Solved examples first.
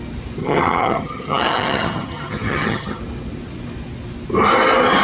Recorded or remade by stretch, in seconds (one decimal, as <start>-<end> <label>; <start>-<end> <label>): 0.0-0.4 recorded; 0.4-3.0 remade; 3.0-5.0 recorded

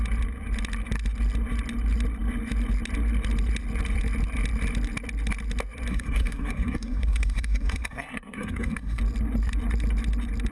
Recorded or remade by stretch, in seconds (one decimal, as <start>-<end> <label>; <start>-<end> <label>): 0.0-5.9 recorded; 5.9-9.0 remade; 9.0-10.5 recorded

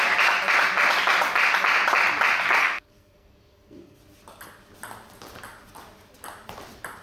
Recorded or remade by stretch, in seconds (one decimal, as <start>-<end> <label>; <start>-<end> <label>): 0.0-2.6 recorded; 2.6-4.0 remade; 4.0-7.0 recorded